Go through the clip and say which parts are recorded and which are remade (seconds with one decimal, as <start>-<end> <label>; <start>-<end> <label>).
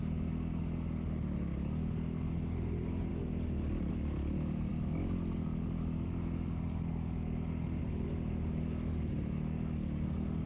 0.0-10.5 recorded